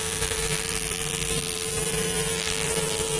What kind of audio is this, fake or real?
fake